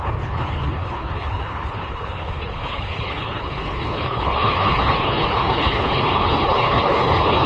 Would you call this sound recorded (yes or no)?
no